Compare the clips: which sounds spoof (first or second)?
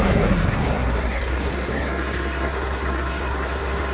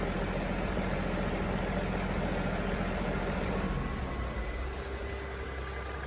first